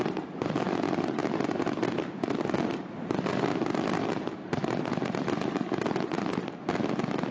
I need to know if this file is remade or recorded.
recorded